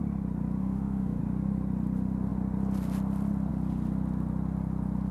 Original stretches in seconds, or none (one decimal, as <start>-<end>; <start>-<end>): 0.0-0.6; 1.2-5.1